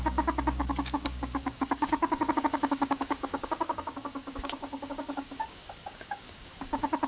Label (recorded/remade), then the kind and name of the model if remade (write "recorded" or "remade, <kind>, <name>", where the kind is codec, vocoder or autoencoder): remade, codec, DAC